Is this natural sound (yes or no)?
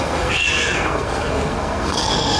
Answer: no